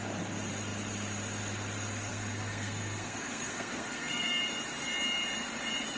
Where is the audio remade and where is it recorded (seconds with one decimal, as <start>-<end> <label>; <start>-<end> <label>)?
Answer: 0.0-2.1 recorded; 2.1-4.4 remade; 4.4-6.0 recorded